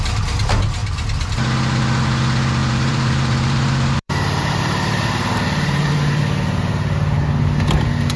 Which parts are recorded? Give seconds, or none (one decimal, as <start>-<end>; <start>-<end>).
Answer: 0.0-2.6; 6.2-8.2